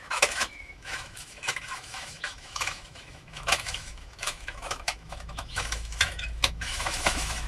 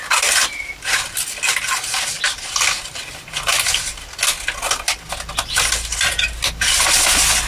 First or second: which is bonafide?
second